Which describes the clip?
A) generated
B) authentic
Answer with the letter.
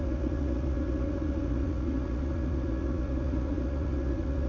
A